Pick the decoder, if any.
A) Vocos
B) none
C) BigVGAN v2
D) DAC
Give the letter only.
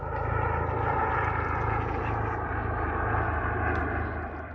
B